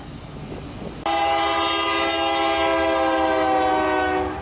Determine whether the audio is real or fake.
real